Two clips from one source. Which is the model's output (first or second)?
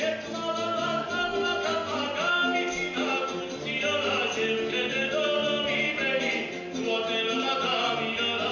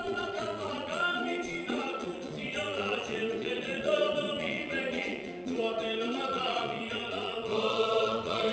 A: second